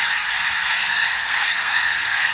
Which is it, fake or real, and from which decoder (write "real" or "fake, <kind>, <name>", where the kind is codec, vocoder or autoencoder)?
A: fake, codec, SNAC